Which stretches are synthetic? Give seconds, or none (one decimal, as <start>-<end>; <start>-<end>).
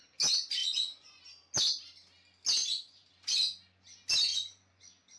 0.6-1.2; 2.6-3.1; 4.3-4.8